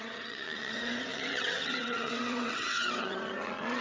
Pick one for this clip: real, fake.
fake